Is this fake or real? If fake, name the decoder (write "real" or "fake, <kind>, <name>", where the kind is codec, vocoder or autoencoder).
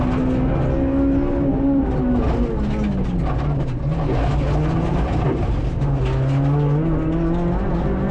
real